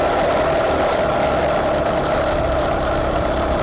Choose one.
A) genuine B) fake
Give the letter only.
A